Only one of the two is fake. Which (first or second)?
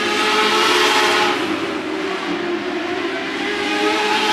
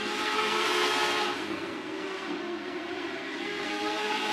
second